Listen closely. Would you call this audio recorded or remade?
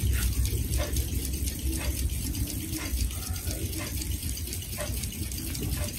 recorded